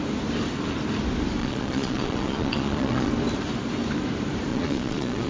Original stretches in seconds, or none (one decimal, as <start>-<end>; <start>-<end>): 0.0-1.4; 3.1-4.5